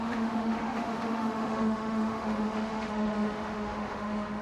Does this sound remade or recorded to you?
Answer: remade